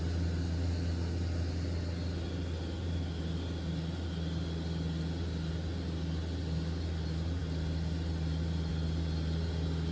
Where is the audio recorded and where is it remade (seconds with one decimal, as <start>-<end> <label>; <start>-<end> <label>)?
0.0-9.9 recorded